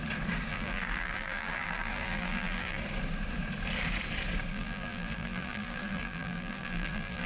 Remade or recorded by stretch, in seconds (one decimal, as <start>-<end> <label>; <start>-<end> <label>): 0.0-0.5 recorded; 0.5-2.8 remade; 2.8-4.5 recorded; 4.5-7.3 remade